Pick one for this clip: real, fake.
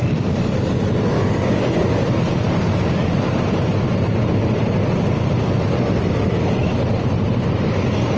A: real